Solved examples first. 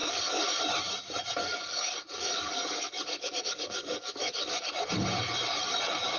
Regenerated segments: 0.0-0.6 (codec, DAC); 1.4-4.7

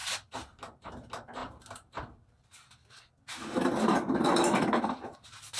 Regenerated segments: none